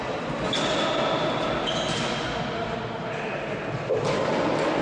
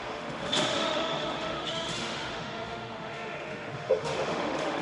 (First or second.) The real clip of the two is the first